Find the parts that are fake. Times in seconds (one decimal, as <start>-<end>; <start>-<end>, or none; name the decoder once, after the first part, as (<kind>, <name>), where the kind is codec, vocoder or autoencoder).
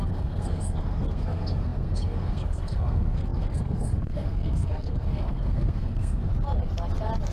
0.0-6.3 (codec, SNAC)